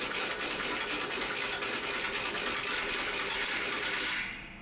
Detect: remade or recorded recorded